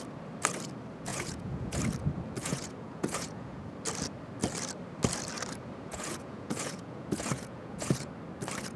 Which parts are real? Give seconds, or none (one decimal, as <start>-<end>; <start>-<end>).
0.0-1.1; 1.8-2.4; 3.6-5.9; 8.1-8.8